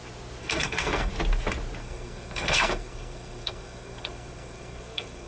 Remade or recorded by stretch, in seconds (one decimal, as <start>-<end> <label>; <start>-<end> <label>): 0.0-0.4 recorded; 0.4-1.1 remade; 1.1-1.8 recorded; 1.8-5.3 remade